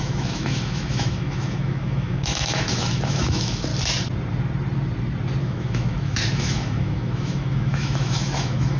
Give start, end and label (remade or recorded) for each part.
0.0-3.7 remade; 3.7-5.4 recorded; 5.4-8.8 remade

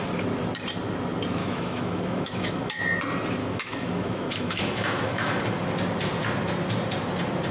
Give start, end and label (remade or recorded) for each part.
0.0-1.4 recorded; 1.4-2.8 remade; 2.8-3.4 recorded; 3.4-5.4 remade; 5.4-7.5 recorded

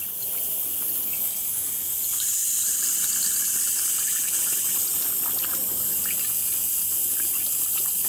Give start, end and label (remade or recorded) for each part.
0.0-8.1 recorded

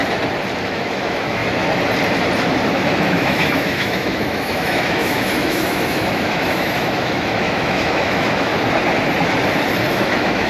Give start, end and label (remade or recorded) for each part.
0.0-0.6 recorded; 0.6-1.4 remade; 1.4-2.7 recorded; 2.7-8.5 remade; 8.5-9.9 recorded; 9.9-10.5 remade

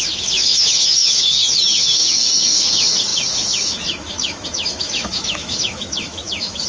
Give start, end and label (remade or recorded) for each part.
0.0-6.7 remade

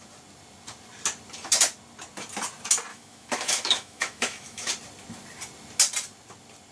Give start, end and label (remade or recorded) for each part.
0.0-2.9 recorded; 2.9-4.7 remade; 4.7-6.7 recorded

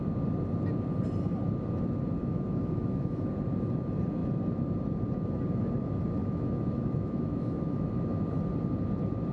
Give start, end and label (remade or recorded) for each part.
0.0-2.2 recorded; 2.2-3.3 remade; 3.3-6.2 recorded; 6.2-7.9 remade; 7.9-9.3 recorded

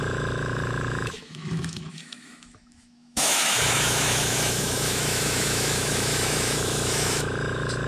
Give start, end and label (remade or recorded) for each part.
0.0-7.9 remade